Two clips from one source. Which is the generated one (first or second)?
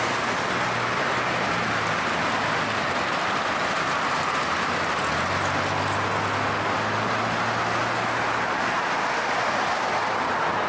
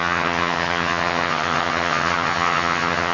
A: second